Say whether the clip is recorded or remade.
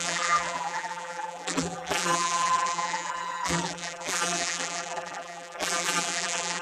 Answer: remade